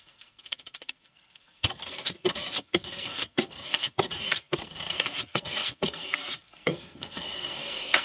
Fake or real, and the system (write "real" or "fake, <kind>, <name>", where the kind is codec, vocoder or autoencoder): fake, codec, SNAC